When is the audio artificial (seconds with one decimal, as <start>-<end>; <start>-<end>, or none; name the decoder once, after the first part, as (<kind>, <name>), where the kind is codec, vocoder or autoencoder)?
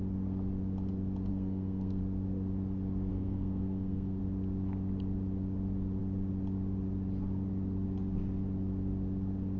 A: 1.3-2.0 (codec, SNAC); 3.1-4.2